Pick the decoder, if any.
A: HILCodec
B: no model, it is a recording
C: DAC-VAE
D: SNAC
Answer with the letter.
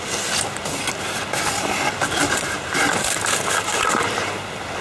B